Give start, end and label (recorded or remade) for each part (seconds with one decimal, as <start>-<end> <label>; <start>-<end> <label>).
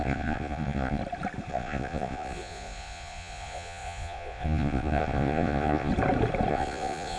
0.0-1.0 remade; 1.0-1.5 recorded; 1.5-5.9 remade; 5.9-6.5 recorded; 6.5-7.2 remade